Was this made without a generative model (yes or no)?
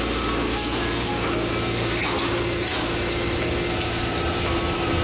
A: yes